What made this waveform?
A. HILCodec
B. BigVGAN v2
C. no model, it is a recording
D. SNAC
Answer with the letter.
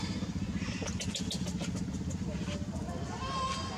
C